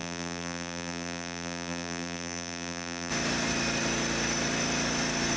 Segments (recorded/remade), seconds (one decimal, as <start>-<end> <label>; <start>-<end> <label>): 0.0-3.1 remade; 3.1-5.4 recorded

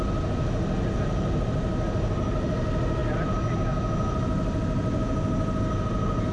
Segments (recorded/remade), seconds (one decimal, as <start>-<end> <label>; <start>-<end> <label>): 0.0-6.3 recorded

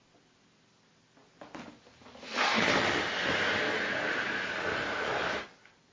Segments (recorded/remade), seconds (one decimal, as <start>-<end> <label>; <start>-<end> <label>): 0.0-5.9 recorded

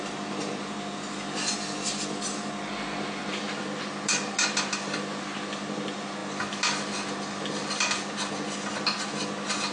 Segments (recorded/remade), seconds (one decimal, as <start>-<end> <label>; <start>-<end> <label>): 0.0-9.7 recorded

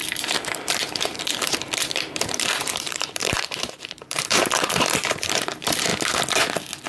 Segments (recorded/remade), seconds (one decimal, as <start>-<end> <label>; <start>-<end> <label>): 0.0-5.9 remade; 5.9-6.9 recorded

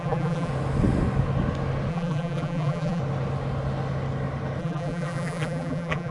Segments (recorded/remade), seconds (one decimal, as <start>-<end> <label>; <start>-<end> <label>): 0.0-0.5 remade; 0.5-1.9 recorded; 1.9-3.0 remade; 3.0-4.6 recorded; 4.6-6.1 remade